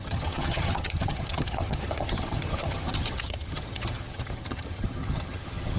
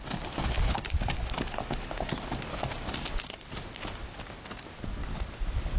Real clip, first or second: second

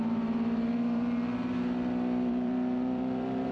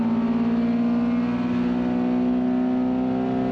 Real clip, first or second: second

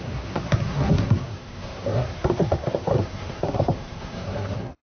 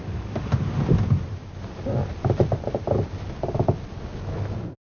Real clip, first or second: second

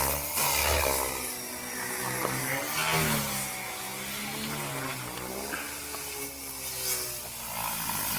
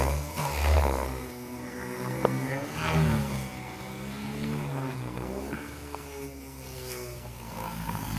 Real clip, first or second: first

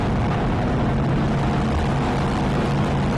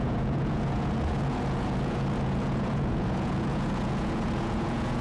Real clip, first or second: first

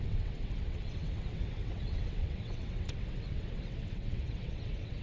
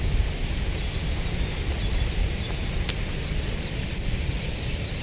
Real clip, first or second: second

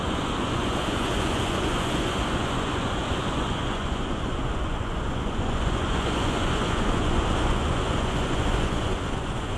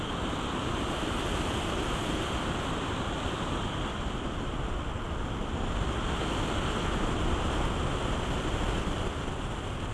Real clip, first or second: second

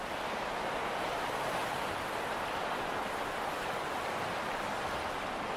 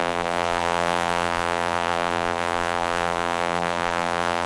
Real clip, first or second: first